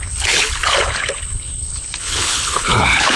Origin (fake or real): fake